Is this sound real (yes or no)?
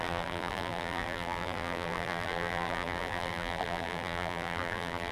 no